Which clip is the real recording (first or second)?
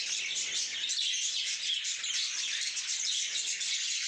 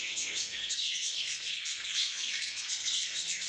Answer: first